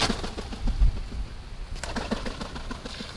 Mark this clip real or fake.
real